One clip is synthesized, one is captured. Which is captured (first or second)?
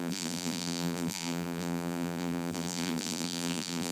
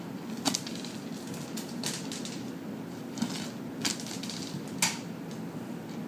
second